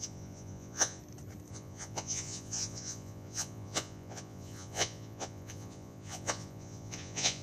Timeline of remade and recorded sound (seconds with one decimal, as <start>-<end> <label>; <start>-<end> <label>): 0.0-1.0 remade; 1.0-1.5 recorded; 1.5-7.4 remade